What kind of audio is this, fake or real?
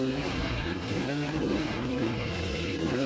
fake